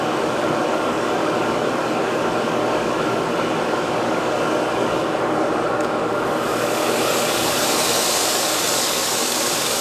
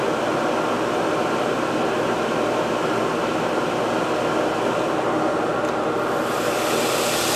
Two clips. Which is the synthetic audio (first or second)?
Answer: first